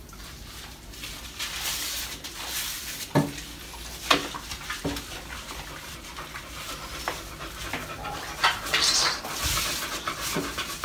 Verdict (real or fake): real